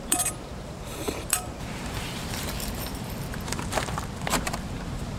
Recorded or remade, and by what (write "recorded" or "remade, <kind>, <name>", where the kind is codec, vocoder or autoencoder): remade, vocoder, BigVGAN v2